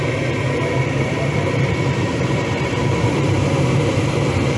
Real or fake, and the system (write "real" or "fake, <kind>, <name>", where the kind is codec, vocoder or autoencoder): fake, vocoder, BigVGAN v2